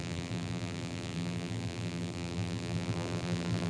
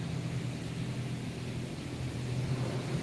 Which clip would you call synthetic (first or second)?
first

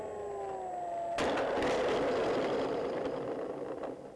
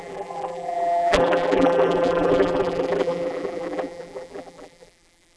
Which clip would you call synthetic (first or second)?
second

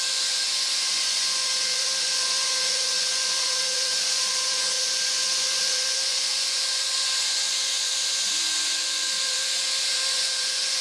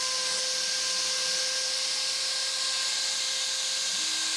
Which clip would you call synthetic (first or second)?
first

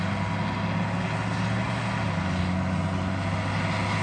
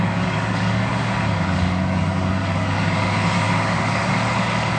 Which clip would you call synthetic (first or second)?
second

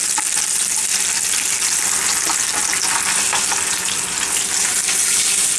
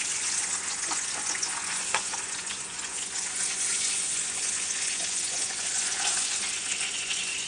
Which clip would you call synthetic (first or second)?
second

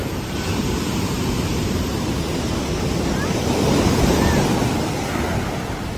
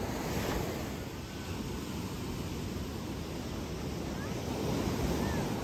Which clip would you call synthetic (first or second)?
first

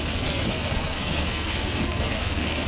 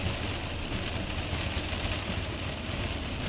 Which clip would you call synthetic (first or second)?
first